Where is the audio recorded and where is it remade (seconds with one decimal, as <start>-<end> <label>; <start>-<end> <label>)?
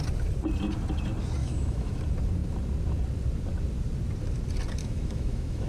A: 0.0-1.4 recorded; 1.4-2.0 remade; 2.0-4.8 recorded; 4.8-5.7 remade